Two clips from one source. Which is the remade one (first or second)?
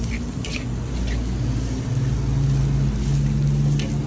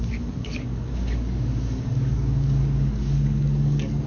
second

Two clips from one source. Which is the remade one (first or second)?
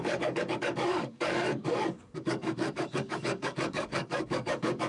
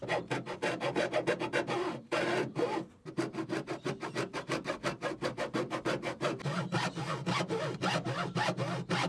first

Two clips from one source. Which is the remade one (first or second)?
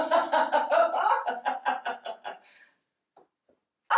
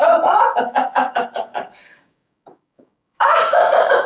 second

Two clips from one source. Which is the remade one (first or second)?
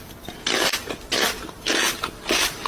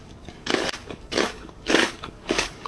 second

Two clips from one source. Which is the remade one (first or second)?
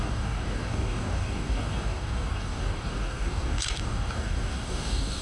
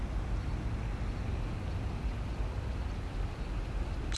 first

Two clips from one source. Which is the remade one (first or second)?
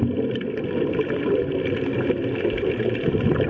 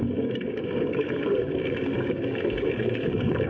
second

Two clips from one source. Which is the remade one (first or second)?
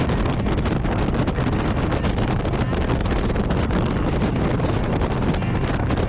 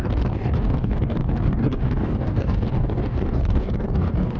second